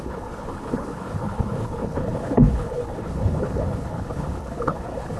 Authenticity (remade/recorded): remade